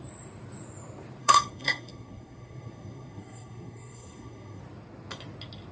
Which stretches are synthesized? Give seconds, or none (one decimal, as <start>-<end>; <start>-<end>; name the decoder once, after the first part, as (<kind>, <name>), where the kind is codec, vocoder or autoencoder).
1.2-4.6 (codec, SNAC)